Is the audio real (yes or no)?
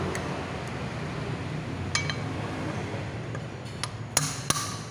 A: yes